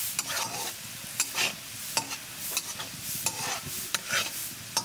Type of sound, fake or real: real